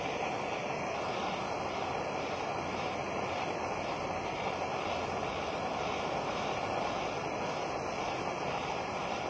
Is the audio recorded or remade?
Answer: recorded